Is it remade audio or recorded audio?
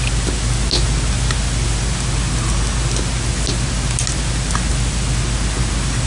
recorded